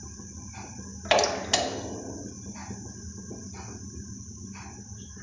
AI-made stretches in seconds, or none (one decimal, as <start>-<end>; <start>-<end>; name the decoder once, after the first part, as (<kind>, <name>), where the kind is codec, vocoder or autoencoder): none